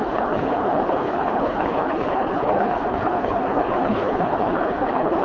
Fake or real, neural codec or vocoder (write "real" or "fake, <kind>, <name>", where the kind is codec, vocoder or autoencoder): fake, codec, HILCodec